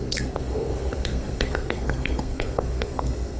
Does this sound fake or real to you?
fake